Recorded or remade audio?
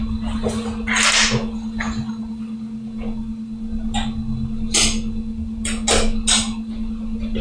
recorded